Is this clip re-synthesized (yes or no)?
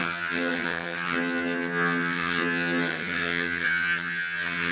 yes